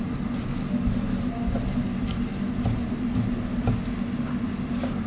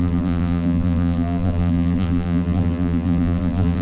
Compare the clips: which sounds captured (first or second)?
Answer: first